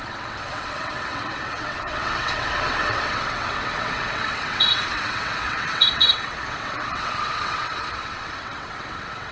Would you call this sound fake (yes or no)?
yes